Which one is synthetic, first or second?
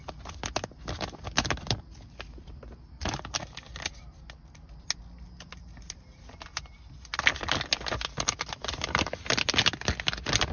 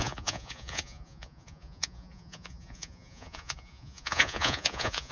second